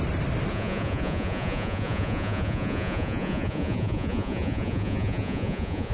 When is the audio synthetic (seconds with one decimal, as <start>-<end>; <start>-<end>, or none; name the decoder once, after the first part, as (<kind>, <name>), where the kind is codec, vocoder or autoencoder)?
0.5-5.9 (vocoder, Vocos)